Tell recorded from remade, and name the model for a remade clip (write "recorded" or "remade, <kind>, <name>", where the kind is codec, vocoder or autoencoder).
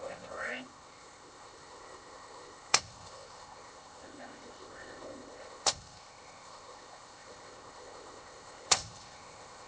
remade, codec, ZipCodec